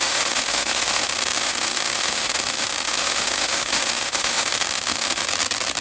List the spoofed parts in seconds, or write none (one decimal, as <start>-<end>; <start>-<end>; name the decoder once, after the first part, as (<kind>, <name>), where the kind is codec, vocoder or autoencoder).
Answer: 0.0-5.2 (autoencoder, DAC-VAE)